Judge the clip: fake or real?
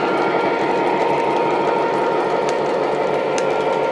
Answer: real